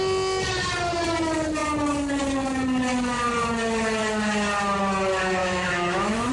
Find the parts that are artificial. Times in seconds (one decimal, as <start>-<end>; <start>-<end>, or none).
5.4-6.3

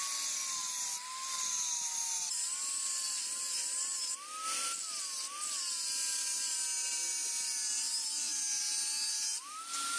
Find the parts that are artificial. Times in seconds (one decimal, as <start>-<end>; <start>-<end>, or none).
none

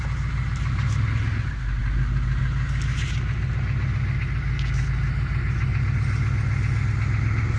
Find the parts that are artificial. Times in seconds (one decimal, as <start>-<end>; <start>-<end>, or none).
none

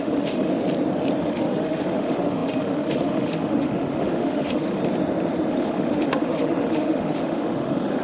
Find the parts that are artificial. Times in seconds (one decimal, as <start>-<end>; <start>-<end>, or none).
0.0-0.5; 1.2-4.8; 5.5-8.0